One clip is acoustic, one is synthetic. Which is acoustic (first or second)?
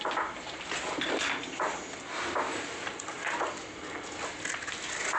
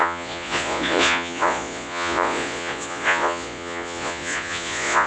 first